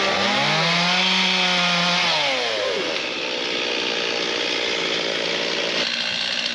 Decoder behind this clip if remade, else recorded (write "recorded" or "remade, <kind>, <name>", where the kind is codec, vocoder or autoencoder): recorded